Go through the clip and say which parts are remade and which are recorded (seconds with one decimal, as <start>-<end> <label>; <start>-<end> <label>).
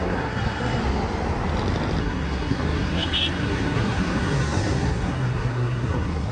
0.0-0.8 remade; 0.8-2.0 recorded; 2.0-6.3 remade